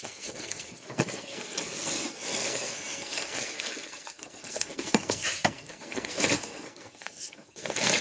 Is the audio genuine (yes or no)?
no